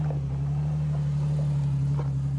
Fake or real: real